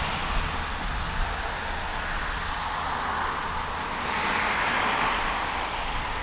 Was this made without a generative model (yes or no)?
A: yes